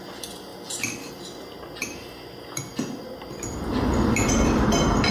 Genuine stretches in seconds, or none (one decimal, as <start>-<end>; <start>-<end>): 0.0-5.1